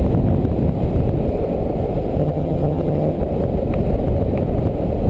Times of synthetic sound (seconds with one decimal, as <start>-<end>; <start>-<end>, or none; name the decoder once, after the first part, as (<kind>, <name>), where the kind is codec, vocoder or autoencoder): 2.2-3.2 (vocoder, HiFi-GAN)